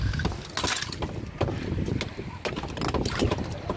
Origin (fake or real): real